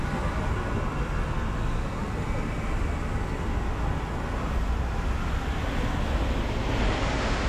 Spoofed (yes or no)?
no